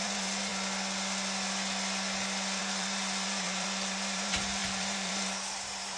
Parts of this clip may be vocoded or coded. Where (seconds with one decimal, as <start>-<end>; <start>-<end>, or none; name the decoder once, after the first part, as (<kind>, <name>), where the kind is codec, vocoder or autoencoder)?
0.0-0.5 (vocoder, BigVGAN v2); 2.6-6.0